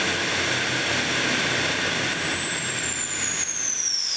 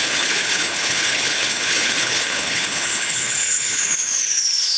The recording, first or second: first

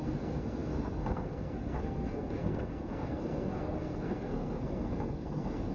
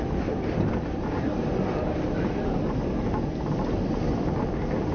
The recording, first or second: second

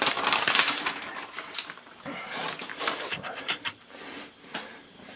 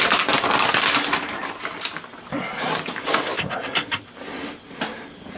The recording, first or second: second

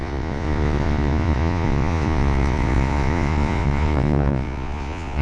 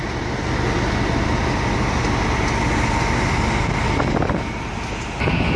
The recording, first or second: second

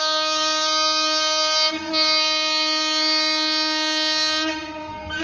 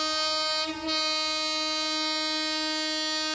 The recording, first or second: second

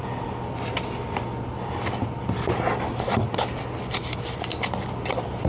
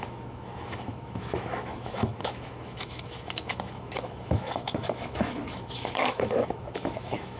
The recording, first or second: first